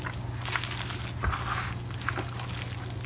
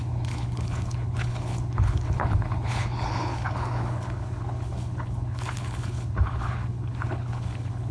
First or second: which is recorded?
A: first